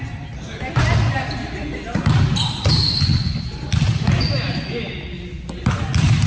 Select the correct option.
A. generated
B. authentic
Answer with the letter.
B